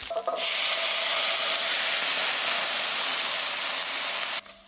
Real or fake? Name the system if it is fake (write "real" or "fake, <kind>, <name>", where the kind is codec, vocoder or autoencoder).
real